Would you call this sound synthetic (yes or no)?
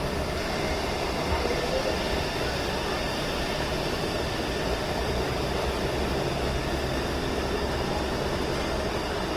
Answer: no